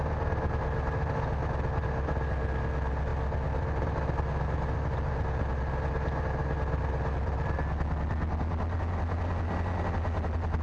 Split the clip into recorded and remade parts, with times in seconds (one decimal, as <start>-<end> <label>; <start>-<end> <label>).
0.0-10.6 recorded